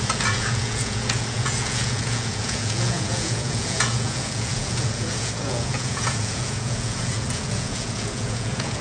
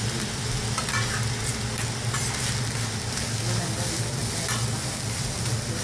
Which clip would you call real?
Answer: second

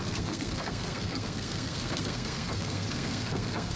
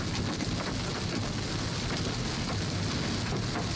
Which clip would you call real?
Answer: second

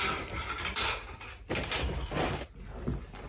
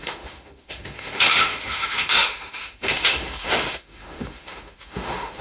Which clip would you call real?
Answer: first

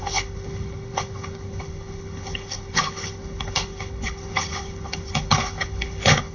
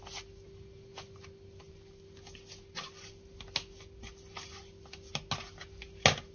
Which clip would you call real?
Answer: second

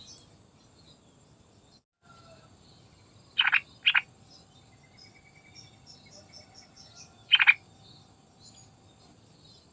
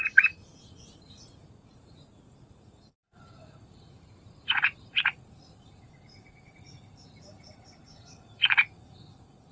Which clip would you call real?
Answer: first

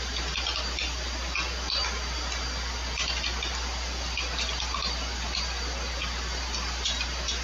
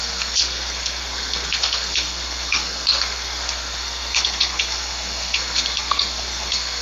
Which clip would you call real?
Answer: first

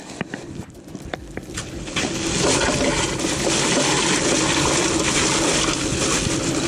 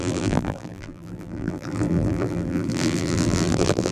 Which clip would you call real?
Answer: first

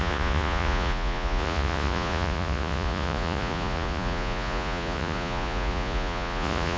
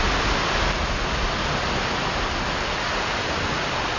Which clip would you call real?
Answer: second